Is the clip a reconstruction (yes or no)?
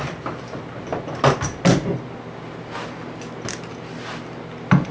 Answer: no